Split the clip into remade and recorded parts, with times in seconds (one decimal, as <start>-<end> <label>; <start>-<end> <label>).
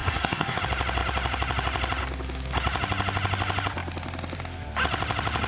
0.0-0.6 remade; 0.6-5.5 recorded